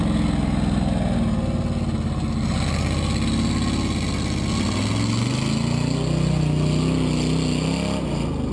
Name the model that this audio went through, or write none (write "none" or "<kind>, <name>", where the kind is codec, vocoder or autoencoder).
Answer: none